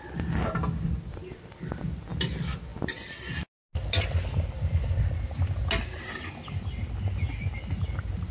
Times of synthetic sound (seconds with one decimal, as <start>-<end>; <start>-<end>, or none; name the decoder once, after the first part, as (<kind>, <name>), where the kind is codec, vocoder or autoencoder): none